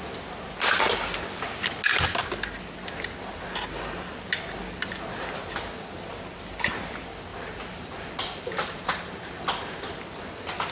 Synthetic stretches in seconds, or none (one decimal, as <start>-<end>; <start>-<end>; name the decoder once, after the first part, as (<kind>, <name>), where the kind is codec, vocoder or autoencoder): 7.3-9.3 (vocoder, BigVGAN v2)